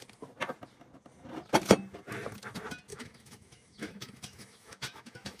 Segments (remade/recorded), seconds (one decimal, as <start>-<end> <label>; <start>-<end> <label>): 0.0-2.9 recorded; 2.9-5.4 remade